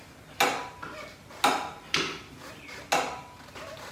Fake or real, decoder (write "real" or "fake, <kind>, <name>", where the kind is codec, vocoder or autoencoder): real